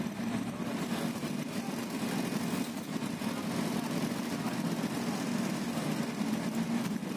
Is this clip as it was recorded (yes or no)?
yes